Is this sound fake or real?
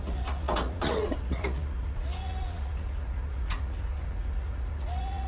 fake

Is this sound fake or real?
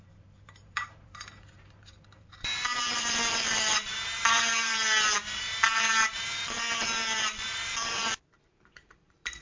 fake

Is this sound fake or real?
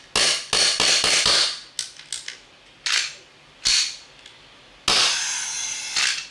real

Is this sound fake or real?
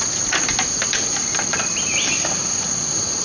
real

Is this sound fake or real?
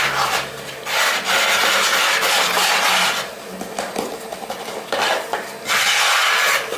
real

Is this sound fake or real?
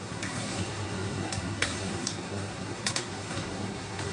fake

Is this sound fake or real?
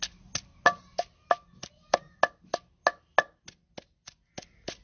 real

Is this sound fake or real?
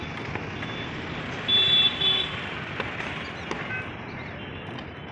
real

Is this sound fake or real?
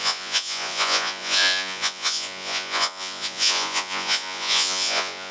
fake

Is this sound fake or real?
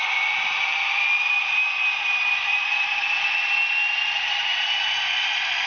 real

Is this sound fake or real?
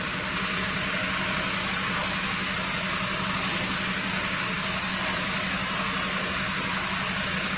real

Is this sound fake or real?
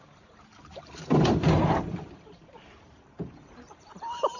fake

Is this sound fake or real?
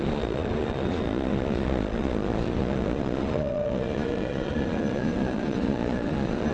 fake